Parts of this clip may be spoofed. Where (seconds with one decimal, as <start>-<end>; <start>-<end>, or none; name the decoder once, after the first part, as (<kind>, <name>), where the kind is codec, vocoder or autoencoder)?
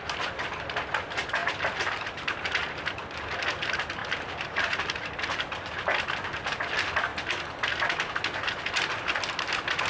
1.4-2.6 (vocoder, BigVGAN v2); 4.0-5.8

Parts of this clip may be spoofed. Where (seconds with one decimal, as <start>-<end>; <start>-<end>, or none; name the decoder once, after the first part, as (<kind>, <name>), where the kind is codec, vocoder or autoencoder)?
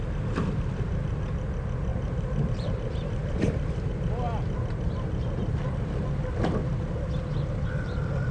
1.9-3.9 (vocoder, BigVGAN v2)